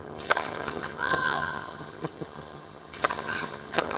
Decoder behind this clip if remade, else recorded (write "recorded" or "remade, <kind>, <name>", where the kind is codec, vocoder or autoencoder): remade, vocoder, HiFi-GAN